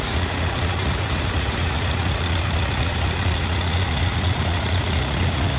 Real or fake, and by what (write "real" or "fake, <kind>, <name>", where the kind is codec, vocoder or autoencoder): fake, vocoder, Vocos